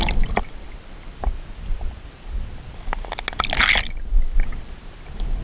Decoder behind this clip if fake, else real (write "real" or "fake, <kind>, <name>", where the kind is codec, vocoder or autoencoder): real